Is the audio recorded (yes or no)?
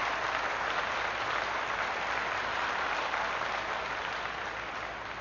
yes